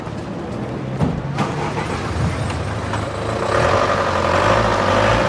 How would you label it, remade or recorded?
recorded